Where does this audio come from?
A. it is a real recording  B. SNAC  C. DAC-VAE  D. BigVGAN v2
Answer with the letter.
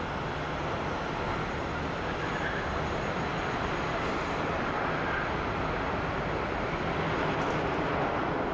A